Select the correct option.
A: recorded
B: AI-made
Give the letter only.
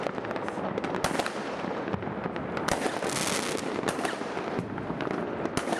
A